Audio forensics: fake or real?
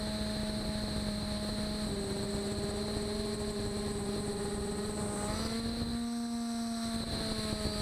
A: real